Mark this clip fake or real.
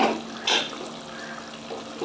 real